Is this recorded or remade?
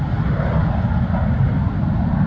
recorded